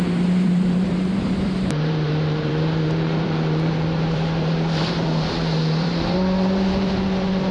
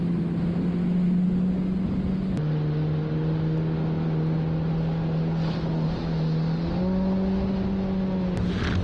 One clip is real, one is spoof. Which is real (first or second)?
second